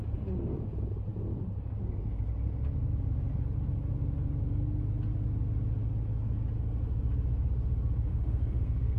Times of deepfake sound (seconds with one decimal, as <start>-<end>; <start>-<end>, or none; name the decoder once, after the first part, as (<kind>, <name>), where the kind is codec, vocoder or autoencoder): 8.1-9.0 (codec, SNAC)